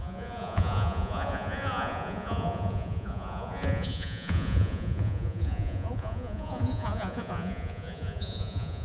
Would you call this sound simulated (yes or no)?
yes